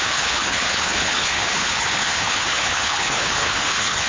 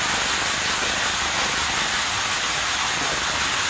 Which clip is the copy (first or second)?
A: first